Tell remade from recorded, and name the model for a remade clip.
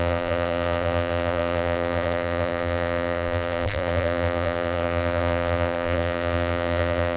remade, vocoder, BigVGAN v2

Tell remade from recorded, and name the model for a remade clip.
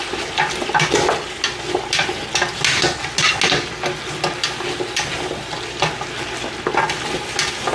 recorded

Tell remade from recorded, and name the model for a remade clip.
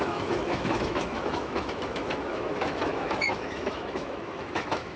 remade, autoencoder, DAC-VAE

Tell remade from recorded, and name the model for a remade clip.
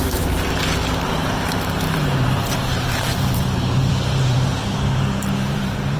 remade, vocoder, BigVGAN v2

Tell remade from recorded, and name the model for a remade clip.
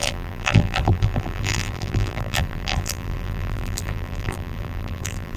remade, vocoder, BigVGAN v2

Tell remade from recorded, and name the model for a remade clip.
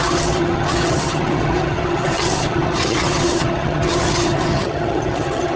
remade, vocoder, HiFi-GAN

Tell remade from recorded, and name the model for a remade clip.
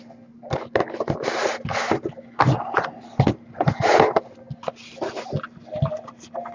recorded